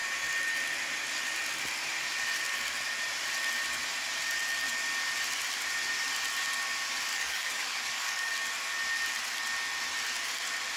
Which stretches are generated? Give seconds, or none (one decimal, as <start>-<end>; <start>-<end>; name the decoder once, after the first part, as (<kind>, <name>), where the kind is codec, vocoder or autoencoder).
7.1-8.3 (codec, DAC)